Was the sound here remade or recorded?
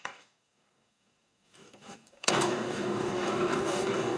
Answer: remade